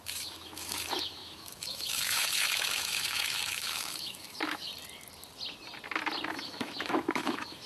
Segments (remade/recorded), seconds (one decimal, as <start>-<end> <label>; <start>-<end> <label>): 0.0-4.7 remade; 4.7-6.3 recorded; 6.3-7.7 remade